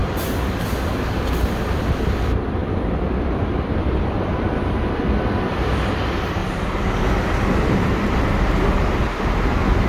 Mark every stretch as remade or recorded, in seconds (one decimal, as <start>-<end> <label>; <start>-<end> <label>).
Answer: 0.0-2.2 recorded; 2.2-6.4 remade; 6.4-7.0 recorded; 7.0-9.9 remade